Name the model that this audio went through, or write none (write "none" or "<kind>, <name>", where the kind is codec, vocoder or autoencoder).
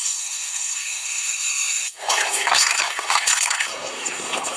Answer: codec, SNAC